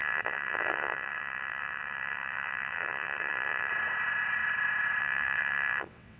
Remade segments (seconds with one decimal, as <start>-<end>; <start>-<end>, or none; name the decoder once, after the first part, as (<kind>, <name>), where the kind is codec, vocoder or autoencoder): 0.0-3.7 (vocoder, WaveNeXt); 5.0-6.2